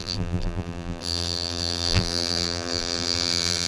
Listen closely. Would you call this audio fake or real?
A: fake